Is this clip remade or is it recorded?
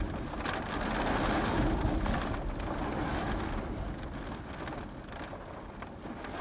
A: recorded